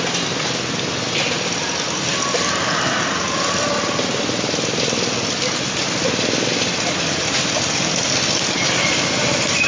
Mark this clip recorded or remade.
recorded